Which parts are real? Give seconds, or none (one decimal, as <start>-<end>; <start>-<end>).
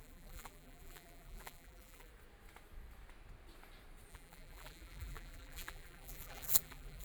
2.1-4.1